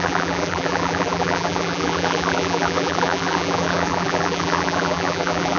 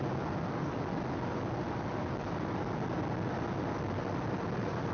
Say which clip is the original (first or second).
second